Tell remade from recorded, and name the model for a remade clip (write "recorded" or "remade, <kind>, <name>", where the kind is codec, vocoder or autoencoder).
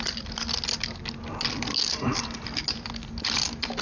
recorded